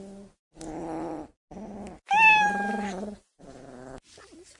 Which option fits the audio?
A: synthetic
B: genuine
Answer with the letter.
B